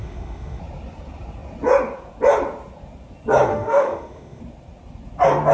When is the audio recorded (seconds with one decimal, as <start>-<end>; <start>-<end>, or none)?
0.6-3.5; 4.4-5.5

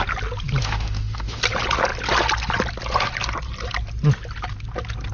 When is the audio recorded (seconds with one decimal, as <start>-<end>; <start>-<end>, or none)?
0.0-0.6; 1.4-5.1

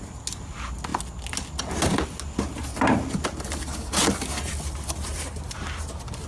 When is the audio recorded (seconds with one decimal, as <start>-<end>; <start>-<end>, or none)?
0.0-6.3

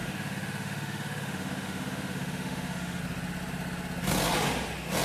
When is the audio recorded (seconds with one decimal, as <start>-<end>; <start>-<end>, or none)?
3.0-5.0